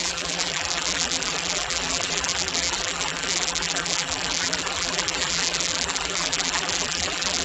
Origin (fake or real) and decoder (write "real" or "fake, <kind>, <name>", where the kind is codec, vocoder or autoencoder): fake, vocoder, BigVGAN v2